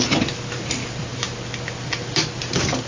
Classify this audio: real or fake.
real